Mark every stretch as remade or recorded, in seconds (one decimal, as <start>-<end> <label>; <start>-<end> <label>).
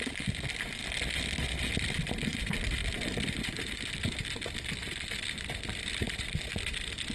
0.0-7.1 recorded